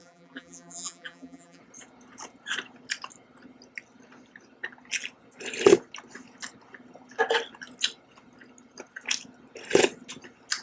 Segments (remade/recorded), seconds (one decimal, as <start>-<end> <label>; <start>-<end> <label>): 0.0-1.6 remade; 1.6-10.6 recorded